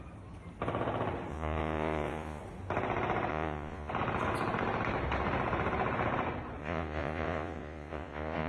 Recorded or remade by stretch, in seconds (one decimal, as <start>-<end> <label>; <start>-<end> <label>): 0.0-1.3 recorded; 1.3-2.4 remade; 2.4-3.3 recorded; 3.3-3.9 remade; 3.9-6.6 recorded; 6.6-8.5 remade